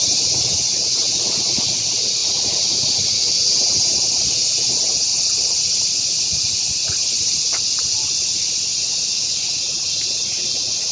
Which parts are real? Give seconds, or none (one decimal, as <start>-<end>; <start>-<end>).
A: 0.0-2.2; 3.5-5.1; 6.5-10.9